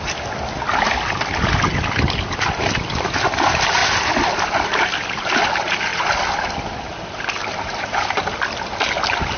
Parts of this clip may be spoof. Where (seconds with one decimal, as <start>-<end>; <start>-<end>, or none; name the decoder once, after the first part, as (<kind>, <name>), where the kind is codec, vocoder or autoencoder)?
5.9-8.2 (vocoder, BigVGAN v2)